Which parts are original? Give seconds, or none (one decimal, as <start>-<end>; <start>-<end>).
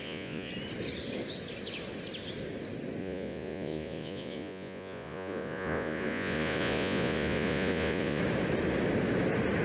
0.5-3.0; 8.2-9.6